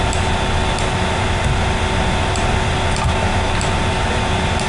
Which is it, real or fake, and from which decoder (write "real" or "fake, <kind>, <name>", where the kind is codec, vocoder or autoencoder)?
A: real